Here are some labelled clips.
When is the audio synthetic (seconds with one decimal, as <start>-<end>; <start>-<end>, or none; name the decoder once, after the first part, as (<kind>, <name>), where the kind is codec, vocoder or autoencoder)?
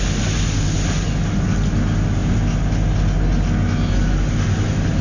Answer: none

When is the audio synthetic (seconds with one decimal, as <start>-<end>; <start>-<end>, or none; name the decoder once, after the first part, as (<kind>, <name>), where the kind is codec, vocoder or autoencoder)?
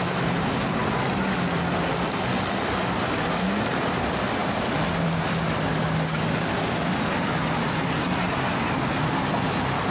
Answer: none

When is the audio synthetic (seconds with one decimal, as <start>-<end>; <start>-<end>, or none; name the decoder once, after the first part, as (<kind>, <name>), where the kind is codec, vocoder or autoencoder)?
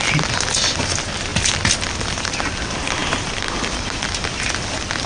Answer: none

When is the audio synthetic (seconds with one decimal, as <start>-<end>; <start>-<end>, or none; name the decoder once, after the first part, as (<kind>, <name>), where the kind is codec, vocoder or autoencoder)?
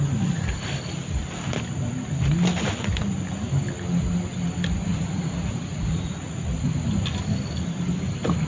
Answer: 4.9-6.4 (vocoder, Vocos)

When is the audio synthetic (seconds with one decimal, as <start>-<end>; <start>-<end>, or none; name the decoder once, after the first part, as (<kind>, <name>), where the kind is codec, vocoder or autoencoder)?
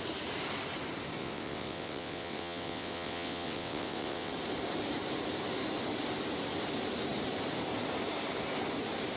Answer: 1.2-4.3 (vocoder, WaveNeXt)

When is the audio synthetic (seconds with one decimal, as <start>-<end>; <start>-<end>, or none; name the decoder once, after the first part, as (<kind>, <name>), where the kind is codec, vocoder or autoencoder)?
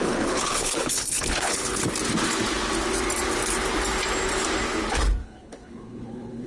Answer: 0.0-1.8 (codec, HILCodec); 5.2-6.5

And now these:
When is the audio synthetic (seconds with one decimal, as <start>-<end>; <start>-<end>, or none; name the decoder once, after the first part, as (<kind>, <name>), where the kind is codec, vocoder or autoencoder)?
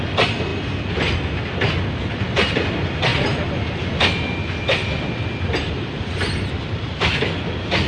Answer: none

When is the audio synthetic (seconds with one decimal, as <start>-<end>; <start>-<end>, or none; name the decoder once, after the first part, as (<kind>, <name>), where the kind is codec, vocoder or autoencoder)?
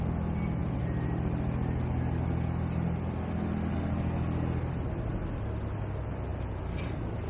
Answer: none